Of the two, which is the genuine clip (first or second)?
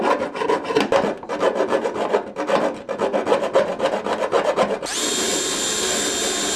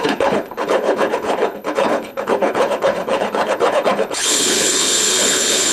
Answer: first